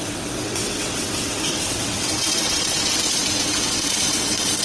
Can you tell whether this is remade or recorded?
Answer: remade